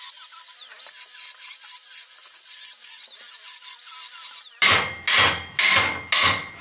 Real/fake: real